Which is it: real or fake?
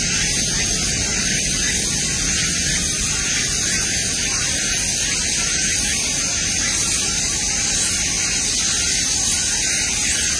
real